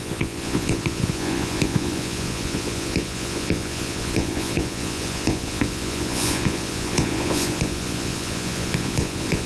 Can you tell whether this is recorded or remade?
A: remade